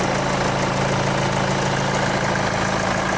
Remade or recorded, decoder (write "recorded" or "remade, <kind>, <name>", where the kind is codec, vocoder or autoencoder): recorded